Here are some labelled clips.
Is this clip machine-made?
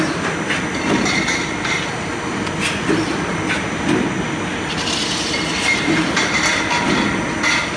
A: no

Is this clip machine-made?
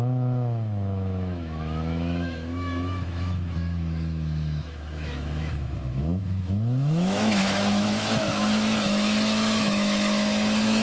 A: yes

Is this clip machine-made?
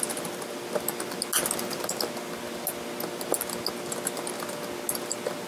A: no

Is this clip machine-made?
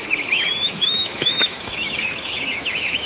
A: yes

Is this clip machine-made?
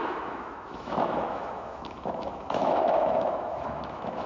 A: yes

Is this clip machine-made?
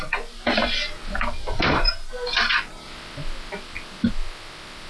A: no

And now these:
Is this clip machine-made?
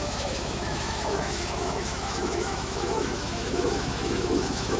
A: yes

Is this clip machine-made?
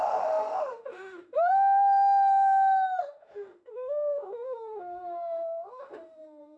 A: yes